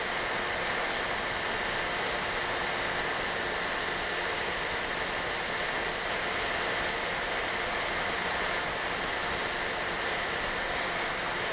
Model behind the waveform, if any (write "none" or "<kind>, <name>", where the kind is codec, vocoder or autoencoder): none